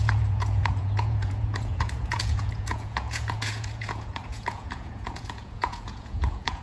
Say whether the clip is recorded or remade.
remade